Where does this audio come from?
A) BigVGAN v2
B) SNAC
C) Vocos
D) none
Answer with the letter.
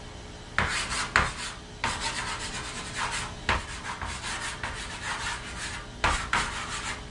D